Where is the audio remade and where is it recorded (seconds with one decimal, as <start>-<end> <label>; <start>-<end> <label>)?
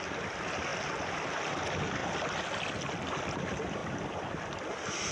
0.0-5.1 recorded